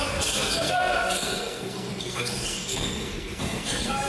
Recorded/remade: remade